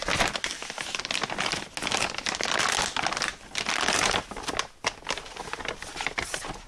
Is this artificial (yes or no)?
no